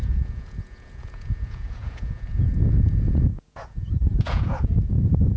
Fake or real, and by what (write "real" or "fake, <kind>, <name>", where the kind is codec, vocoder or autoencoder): fake, vocoder, Vocos